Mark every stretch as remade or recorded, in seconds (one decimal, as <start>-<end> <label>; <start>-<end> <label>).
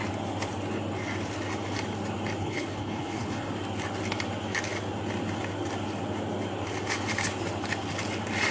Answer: 0.0-2.4 recorded; 2.4-3.5 remade; 3.5-8.5 recorded